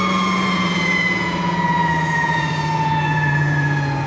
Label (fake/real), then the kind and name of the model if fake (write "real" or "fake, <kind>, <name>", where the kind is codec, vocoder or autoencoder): fake, vocoder, Vocos